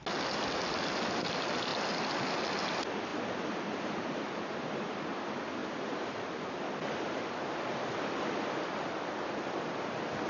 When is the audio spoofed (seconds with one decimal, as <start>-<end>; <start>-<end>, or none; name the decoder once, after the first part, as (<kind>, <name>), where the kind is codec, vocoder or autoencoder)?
none